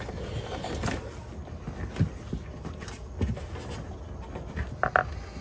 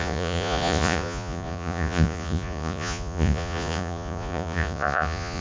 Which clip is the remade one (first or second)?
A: second